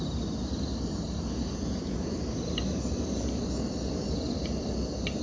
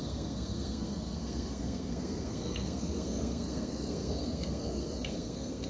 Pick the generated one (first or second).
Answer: second